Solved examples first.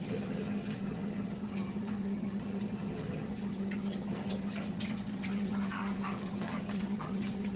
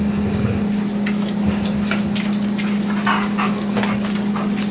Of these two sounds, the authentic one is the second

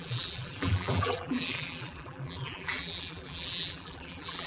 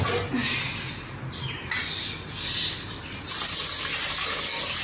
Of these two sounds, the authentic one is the second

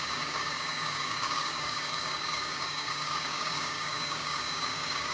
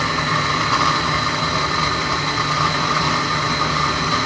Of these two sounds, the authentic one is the second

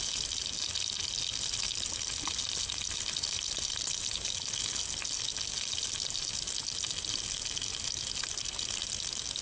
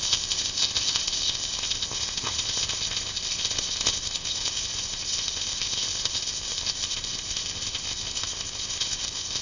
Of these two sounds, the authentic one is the first